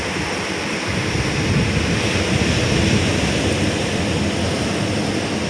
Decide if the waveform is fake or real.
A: real